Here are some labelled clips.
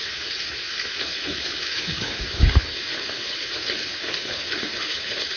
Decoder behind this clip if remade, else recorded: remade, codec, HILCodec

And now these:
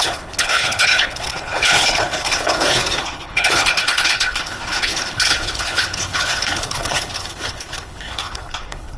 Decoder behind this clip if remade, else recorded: remade, codec, HILCodec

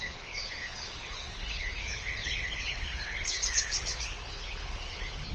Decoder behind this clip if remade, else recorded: remade, codec, HILCodec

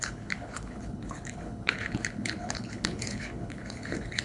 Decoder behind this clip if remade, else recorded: remade, codec, HILCodec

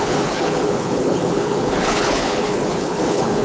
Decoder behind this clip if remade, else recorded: remade, codec, HILCodec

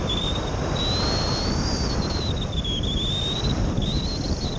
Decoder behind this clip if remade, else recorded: recorded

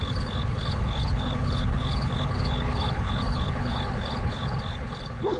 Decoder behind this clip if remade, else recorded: remade, codec, HILCodec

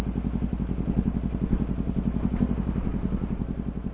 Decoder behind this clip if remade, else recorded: recorded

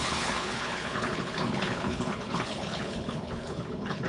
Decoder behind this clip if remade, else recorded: remade, codec, HILCodec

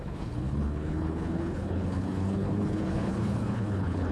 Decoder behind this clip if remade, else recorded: remade, codec, HILCodec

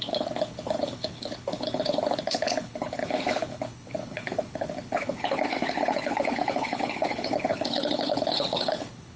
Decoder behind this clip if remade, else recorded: remade, codec, HILCodec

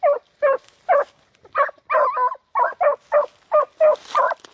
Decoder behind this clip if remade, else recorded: recorded